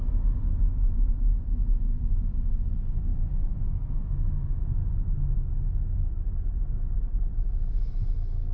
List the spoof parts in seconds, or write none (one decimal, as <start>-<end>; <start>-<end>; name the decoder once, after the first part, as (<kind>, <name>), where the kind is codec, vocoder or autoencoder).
0.7-2.3 (autoencoder, DAC-VAE); 3.1-4.6; 7.3-7.9